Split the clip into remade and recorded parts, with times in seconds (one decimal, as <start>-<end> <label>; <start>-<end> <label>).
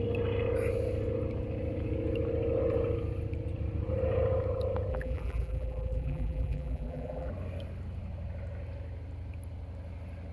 0.0-4.9 recorded; 4.9-7.3 remade; 7.3-10.3 recorded